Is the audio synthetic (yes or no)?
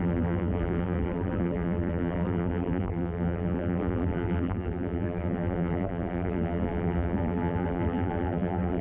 yes